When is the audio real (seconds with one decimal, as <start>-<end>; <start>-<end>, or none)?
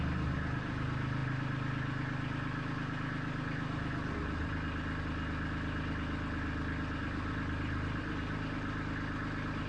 0.0-9.7